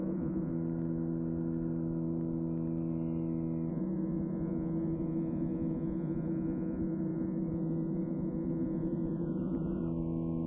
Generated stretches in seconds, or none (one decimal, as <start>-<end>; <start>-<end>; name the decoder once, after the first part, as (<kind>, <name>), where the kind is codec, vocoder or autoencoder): 0.0-0.5 (vocoder, Vocos); 3.7-9.8